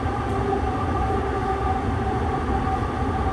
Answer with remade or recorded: recorded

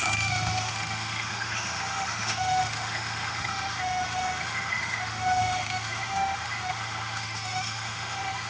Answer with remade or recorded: remade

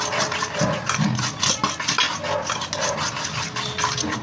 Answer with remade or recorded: recorded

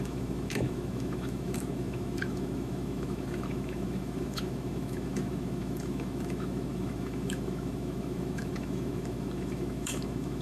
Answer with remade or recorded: remade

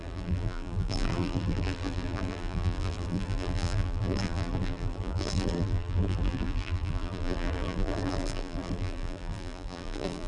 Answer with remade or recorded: remade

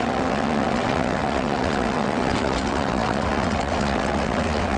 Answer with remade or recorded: remade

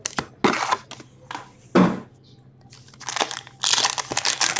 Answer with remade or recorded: recorded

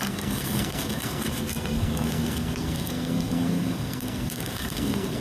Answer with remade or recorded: remade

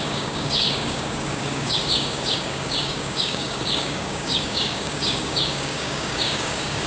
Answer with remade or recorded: remade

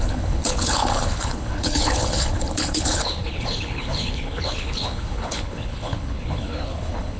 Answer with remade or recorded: remade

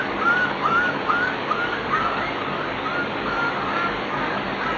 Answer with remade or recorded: remade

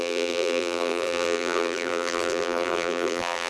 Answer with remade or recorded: remade